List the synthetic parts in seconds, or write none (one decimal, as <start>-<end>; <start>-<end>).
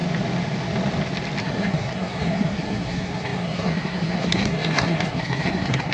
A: 1.4-5.9